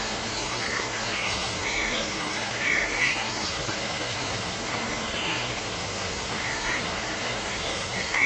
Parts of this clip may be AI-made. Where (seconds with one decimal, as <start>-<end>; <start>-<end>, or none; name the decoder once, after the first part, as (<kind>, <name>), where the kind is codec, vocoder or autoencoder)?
0.0-8.3 (codec, SNAC)